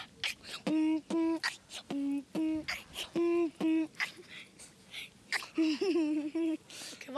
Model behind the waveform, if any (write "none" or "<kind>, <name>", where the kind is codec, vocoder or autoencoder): none